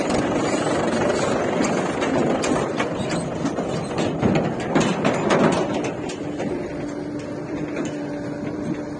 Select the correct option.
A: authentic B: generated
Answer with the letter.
A